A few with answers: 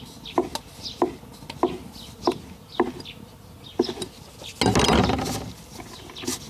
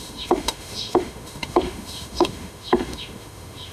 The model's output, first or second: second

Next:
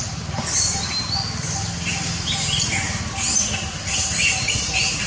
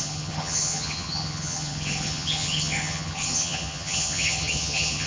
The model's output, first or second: second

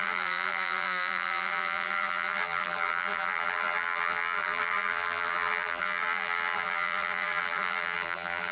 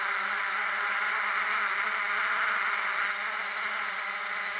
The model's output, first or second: first